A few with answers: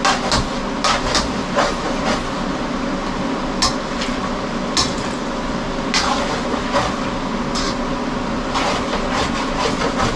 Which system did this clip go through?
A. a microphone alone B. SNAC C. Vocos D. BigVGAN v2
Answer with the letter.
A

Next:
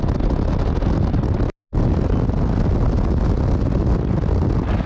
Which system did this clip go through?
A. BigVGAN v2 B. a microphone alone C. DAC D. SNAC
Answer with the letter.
B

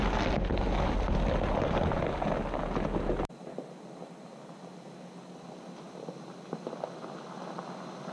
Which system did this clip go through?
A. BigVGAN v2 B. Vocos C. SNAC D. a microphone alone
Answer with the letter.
D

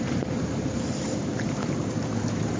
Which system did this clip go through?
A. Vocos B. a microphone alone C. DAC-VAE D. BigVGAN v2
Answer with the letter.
D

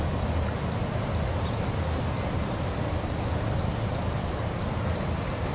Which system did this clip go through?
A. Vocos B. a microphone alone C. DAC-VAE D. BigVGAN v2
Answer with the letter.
B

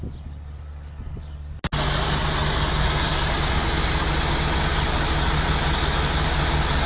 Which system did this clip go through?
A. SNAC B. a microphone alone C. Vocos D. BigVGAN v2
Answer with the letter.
B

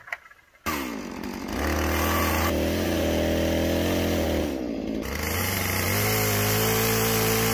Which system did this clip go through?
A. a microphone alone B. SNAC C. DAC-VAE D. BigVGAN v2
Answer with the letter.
A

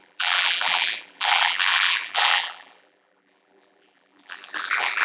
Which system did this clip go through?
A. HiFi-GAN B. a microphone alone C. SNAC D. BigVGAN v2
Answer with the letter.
D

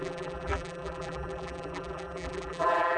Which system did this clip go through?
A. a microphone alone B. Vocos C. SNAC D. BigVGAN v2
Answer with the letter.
D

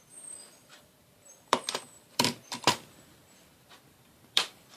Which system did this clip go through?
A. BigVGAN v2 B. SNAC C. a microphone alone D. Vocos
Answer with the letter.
A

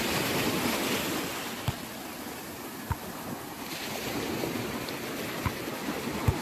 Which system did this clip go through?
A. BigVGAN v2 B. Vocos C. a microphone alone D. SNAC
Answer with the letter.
C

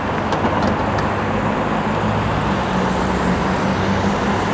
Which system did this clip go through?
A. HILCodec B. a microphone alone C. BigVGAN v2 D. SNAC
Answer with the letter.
B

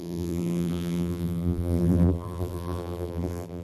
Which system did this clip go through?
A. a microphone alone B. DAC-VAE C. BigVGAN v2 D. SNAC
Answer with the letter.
C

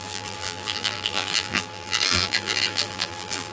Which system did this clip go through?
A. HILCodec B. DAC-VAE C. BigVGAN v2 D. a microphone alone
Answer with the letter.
C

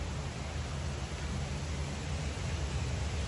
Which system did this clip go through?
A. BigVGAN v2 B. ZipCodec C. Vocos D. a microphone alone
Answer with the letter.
D